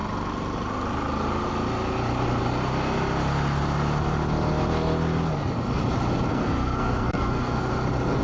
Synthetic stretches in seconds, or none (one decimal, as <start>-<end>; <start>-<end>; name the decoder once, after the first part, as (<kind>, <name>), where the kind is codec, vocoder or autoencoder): 6.3-7.7 (codec, SNAC)